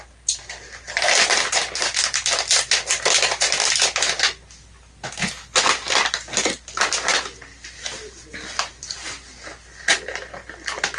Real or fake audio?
real